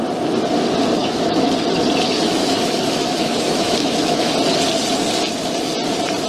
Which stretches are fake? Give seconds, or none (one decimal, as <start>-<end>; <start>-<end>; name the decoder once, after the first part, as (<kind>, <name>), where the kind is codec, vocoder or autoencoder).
1.0-1.5 (autoencoder, DAC-VAE); 2.4-4.3